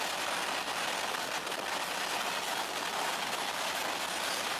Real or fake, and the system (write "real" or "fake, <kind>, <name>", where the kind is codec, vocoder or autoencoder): real